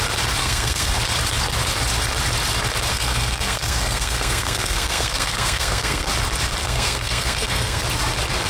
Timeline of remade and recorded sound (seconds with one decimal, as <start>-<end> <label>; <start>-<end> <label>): 0.0-0.4 recorded; 0.4-0.9 remade; 0.9-2.9 recorded; 2.9-6.1 remade; 6.1-6.6 recorded; 6.6-7.8 remade; 7.8-8.5 recorded

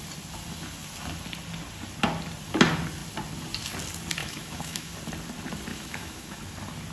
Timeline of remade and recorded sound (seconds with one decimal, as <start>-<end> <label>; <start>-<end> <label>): 0.0-4.2 recorded; 4.2-4.9 remade; 4.9-5.7 recorded; 5.7-6.4 remade; 6.4-6.9 recorded

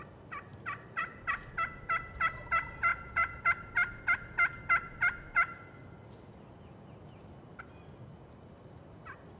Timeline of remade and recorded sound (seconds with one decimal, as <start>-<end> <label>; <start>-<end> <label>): 0.0-2.9 recorded; 2.9-3.4 remade; 3.4-9.4 recorded

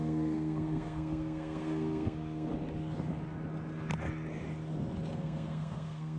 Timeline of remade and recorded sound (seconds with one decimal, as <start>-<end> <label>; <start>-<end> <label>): 0.0-2.5 remade; 2.5-5.1 recorded; 5.1-6.2 remade

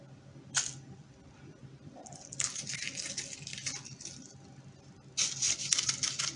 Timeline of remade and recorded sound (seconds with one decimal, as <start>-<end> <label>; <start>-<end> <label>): 0.0-6.4 recorded

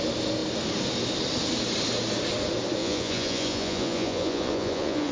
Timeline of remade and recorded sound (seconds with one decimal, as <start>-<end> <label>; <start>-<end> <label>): 0.0-2.8 recorded; 2.8-5.1 remade